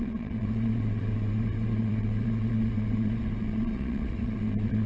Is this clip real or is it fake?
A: fake